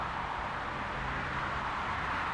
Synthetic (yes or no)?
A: no